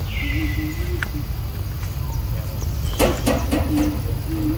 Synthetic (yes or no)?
no